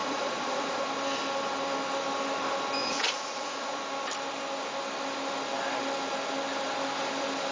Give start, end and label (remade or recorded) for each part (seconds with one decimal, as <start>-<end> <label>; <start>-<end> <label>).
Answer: 0.0-0.8 remade; 0.8-2.8 recorded; 2.8-3.8 remade; 3.8-7.5 recorded